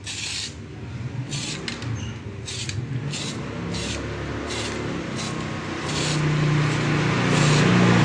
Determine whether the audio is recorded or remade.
recorded